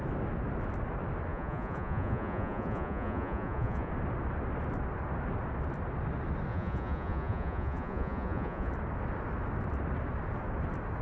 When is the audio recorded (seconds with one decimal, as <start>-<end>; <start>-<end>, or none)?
0.0-1.3; 3.9-6.5; 8.7-11.0